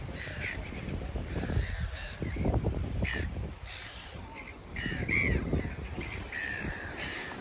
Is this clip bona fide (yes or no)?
no